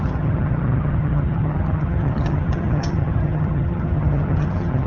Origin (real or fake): fake